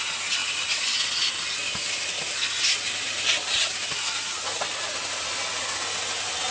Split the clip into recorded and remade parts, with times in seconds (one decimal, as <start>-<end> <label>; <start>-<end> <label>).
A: 0.0-0.4 recorded; 0.4-1.1 remade; 1.1-6.5 recorded